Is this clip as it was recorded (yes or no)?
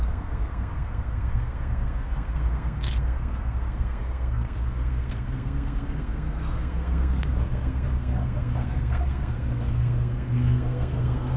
no